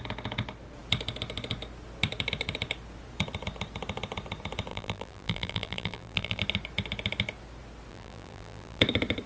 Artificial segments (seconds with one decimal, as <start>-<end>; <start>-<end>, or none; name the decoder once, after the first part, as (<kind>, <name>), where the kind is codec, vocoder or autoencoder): 4.7-6.4 (vocoder, BigVGAN v2); 7.9-8.8